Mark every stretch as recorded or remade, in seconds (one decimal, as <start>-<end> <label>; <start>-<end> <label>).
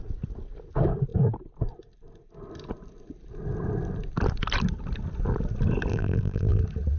0.0-5.9 recorded; 5.9-6.6 remade; 6.6-7.0 recorded